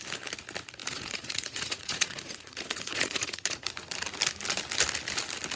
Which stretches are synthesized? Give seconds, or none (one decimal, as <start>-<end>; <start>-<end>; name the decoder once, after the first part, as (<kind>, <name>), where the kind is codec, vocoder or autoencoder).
0.8-3.7 (vocoder, Vocos)

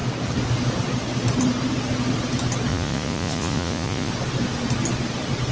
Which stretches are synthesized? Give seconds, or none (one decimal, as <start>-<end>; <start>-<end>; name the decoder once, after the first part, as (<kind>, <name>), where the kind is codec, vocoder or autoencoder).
2.7-4.1 (vocoder, Vocos)

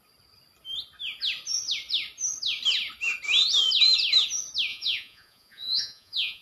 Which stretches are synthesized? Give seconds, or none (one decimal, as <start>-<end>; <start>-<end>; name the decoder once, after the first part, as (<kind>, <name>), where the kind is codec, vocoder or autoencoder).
4.7-6.4 (vocoder, Vocos)